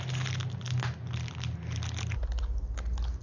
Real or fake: real